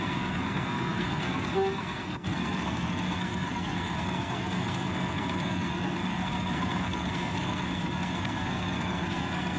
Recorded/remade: remade